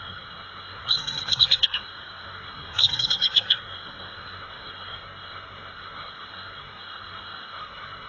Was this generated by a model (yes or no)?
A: yes